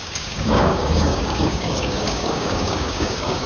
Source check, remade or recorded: remade